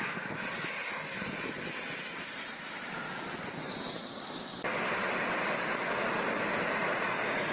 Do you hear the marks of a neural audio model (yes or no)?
no